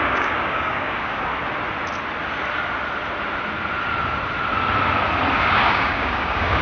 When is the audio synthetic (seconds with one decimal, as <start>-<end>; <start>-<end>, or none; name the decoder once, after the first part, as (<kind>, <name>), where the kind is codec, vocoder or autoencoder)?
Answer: 0.0-1.3 (codec, DAC); 5.3-6.6